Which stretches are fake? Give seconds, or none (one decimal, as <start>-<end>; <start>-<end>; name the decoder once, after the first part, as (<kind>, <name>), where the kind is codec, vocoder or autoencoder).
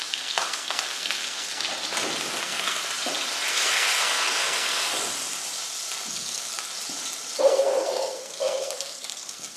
0.0-1.7 (codec, SNAC); 2.4-2.8; 3.5-4.9; 6.1-6.7; 7.4-9.6